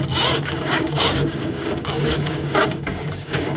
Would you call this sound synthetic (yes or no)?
yes